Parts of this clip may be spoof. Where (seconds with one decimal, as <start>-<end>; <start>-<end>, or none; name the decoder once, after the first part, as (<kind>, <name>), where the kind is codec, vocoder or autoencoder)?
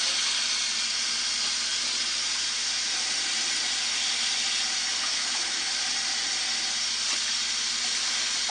5.0-5.7 (autoencoder, DAC-VAE)